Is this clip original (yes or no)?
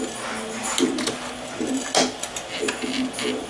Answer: yes